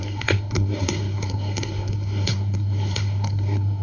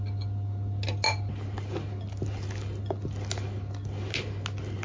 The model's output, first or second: first